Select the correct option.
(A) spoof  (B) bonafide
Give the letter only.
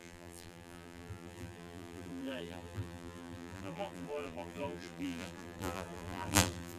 A